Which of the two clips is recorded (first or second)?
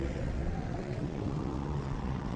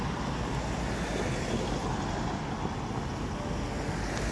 second